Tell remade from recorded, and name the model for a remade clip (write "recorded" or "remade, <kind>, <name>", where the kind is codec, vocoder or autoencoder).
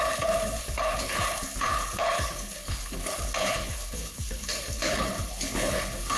remade, codec, HILCodec